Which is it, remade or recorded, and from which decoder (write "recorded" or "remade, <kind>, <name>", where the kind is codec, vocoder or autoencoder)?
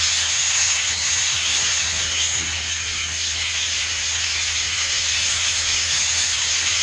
remade, codec, SNAC